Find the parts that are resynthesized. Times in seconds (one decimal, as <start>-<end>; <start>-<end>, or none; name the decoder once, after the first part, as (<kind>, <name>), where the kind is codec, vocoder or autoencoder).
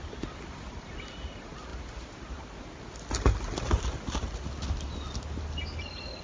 none